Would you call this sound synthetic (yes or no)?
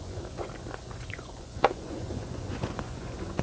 yes